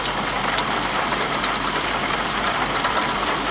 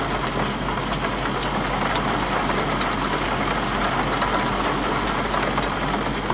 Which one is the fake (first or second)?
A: first